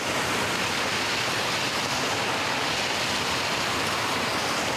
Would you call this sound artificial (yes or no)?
no